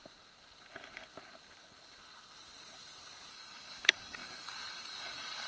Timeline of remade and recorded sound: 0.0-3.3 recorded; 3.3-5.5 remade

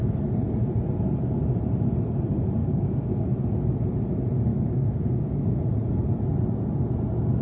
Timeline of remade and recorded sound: 0.0-2.6 recorded; 2.6-3.2 remade; 3.2-4.5 recorded; 4.5-5.6 remade; 5.6-7.4 recorded

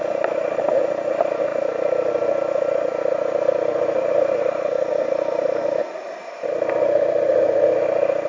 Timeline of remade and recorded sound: 0.0-8.3 recorded

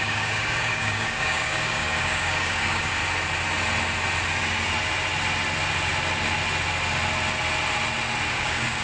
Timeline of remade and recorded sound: 0.0-3.0 remade; 3.0-8.3 recorded; 8.3-8.8 remade

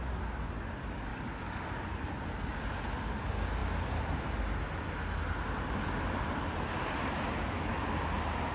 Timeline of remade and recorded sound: 0.0-1.1 recorded; 1.1-1.7 remade; 1.7-8.5 recorded